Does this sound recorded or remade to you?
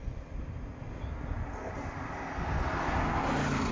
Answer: recorded